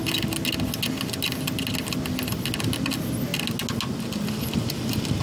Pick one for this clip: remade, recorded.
recorded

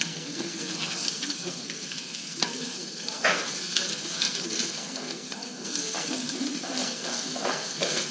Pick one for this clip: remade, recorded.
remade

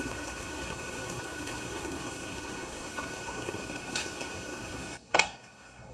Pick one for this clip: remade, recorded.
remade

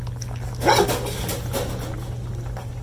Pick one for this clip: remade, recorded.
recorded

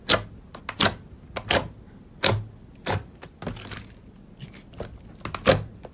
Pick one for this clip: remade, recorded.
recorded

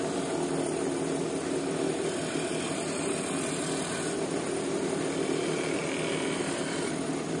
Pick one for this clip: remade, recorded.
recorded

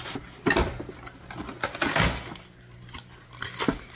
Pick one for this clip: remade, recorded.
recorded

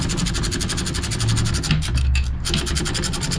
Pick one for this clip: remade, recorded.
recorded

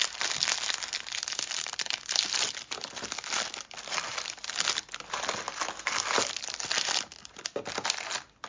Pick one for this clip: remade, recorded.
recorded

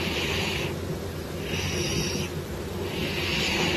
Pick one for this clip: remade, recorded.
recorded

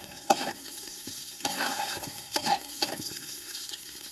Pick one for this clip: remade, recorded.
remade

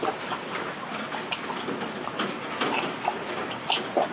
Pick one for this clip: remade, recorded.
recorded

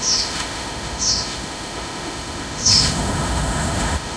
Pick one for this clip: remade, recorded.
remade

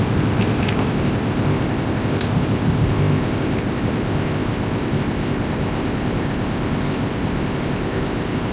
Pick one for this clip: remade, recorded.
remade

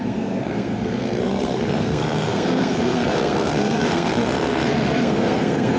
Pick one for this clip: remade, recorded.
remade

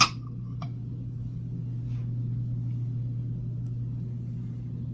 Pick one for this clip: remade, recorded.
recorded